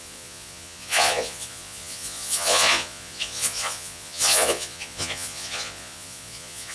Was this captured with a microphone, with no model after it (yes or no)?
no